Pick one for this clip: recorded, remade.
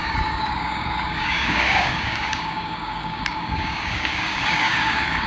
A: remade